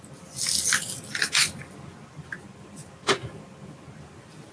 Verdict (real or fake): real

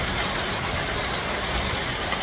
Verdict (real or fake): real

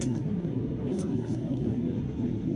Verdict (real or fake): fake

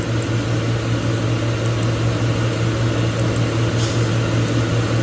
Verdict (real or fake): real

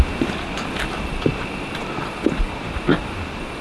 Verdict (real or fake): real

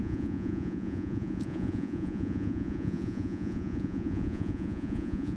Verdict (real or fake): fake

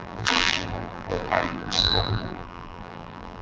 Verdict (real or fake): fake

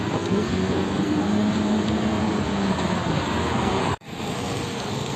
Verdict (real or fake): fake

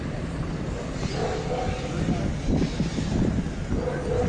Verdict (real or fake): real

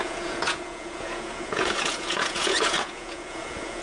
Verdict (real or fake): fake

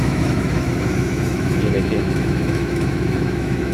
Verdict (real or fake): fake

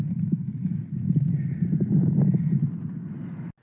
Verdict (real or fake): real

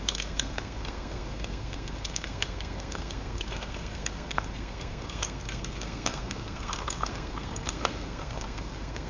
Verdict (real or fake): fake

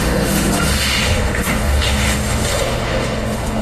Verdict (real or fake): fake